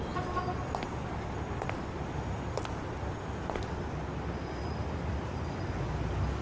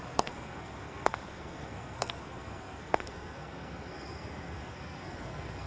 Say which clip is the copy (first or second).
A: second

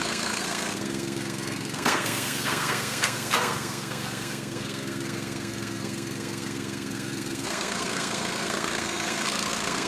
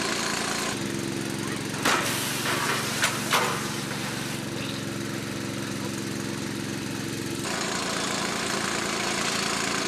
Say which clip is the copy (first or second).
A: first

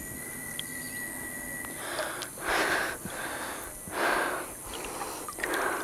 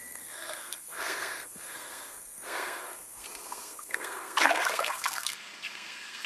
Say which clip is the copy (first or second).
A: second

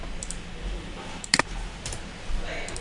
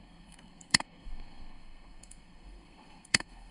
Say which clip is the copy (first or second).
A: second